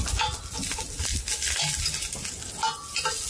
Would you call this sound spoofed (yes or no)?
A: no